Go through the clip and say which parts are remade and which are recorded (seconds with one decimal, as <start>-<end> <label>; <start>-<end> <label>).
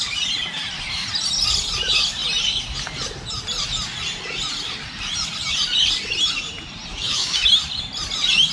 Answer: 0.0-6.9 recorded; 6.9-7.5 remade; 7.5-8.5 recorded